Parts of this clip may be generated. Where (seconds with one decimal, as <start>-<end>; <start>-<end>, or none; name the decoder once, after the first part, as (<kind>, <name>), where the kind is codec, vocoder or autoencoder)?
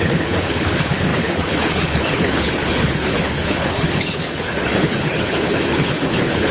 0.0-6.5 (codec, HILCodec)